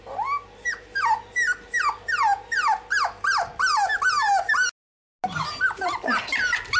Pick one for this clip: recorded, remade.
recorded